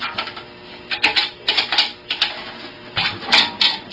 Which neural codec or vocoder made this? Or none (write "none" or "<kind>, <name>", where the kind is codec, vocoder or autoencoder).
none